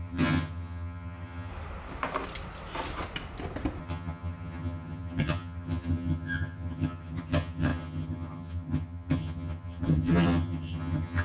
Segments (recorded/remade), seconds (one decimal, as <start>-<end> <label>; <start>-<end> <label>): 0.0-1.5 remade; 1.5-3.8 recorded; 3.8-11.2 remade